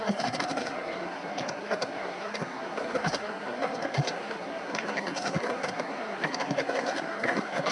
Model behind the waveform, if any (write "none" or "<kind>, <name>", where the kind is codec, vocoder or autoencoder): codec, SNAC